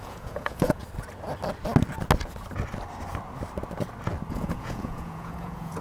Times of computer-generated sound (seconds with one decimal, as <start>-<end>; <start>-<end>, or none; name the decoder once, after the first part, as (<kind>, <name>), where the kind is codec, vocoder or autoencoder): 0.0-0.8 (vocoder, Vocos); 4.3-5.8